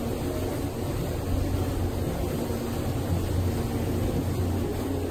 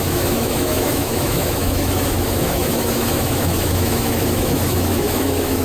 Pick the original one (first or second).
first